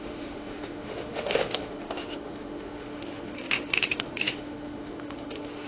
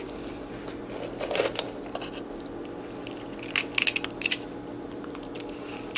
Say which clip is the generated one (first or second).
first